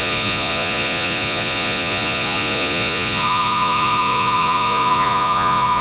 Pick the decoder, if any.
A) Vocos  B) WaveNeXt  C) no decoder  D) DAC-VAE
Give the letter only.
A